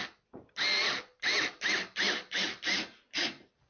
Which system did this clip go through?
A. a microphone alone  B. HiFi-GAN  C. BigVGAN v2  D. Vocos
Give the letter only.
A